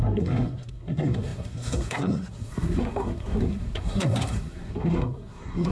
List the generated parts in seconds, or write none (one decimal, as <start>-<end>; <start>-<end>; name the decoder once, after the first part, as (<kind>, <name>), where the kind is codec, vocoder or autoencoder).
0.0-5.7 (codec, SNAC)